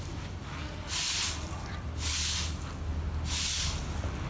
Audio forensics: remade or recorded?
recorded